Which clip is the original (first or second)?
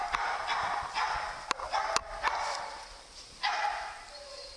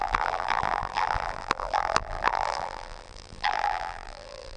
first